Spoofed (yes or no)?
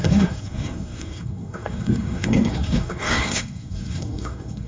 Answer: yes